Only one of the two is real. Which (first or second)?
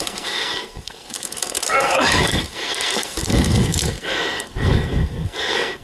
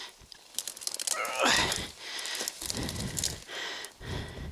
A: second